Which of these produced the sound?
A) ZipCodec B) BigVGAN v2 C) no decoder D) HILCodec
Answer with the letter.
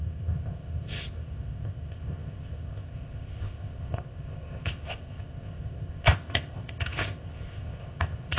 A